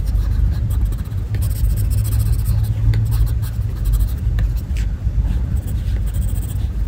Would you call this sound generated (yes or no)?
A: no